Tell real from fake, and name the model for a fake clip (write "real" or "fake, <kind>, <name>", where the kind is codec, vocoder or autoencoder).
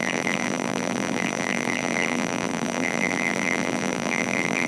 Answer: fake, vocoder, BigVGAN v2